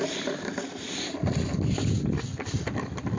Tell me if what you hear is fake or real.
real